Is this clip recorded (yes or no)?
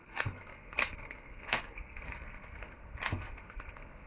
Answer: no